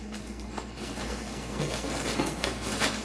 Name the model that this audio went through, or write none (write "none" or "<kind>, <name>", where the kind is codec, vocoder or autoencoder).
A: codec, SNAC